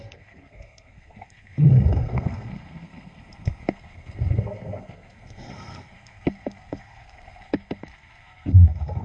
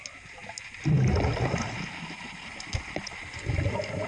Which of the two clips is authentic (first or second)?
second